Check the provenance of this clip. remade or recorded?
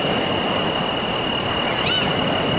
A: recorded